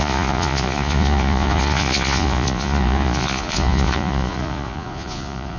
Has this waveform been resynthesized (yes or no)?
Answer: yes